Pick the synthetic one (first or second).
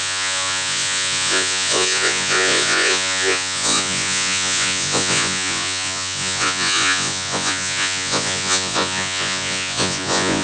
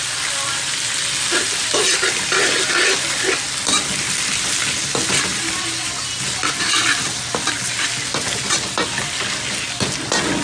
first